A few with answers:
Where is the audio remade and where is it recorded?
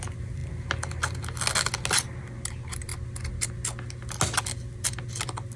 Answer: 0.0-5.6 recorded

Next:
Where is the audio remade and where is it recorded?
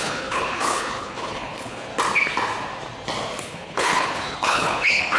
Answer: 0.0-1.9 remade; 1.9-3.4 recorded; 3.4-5.2 remade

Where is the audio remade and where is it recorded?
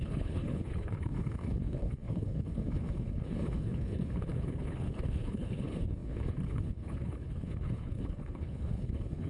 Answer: 0.0-9.3 remade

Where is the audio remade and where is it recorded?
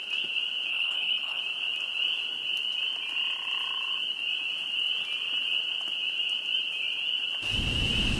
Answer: 0.0-0.7 recorded; 0.7-1.4 remade; 1.4-8.2 recorded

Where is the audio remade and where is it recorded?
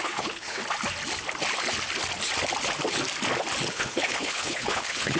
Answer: 0.0-0.6 remade; 0.6-3.7 recorded; 3.7-5.2 remade